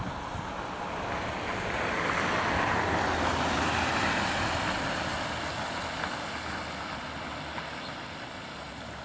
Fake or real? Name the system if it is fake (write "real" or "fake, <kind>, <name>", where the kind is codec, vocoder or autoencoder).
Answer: real